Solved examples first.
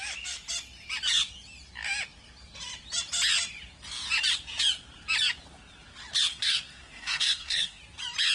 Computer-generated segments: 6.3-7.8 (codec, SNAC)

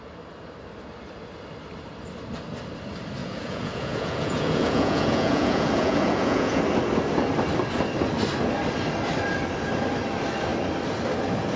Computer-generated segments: 3.2-6.6 (vocoder, Vocos)

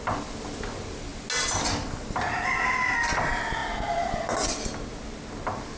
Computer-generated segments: none

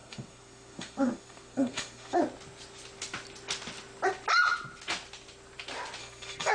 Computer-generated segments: 0.0-2.2 (codec, SNAC); 6.0-6.5